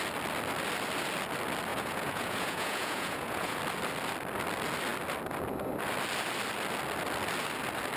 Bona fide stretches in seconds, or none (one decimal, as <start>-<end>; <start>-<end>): 0.0-1.7; 3.6-8.0